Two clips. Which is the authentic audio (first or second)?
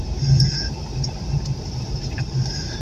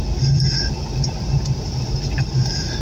second